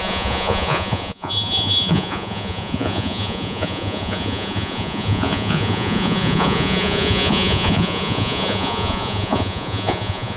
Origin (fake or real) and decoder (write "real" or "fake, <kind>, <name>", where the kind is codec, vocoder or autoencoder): fake, vocoder, Vocos